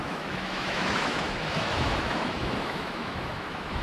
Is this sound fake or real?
fake